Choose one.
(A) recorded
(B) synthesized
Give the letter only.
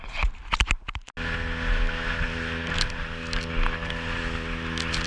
A